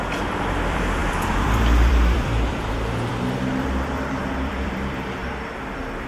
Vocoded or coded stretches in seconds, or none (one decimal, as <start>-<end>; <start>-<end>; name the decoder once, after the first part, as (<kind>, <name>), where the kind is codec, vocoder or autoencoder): 0.0-5.2 (vocoder, BigVGAN v2)